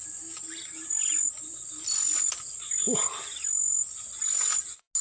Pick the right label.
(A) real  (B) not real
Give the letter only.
A